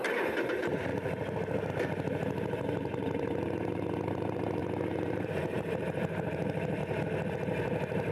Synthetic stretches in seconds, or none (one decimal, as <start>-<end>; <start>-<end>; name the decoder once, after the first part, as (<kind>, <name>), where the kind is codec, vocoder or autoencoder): 0.0-0.9 (vocoder, BigVGAN v2); 1.7-6.8; 7.3-8.1